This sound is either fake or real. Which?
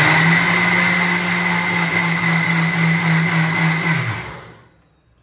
real